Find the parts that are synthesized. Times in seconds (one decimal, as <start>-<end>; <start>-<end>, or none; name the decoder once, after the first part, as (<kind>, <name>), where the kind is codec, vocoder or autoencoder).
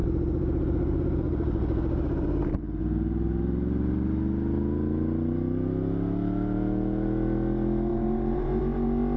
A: 0.0-2.8 (vocoder, BigVGAN v2); 7.9-8.6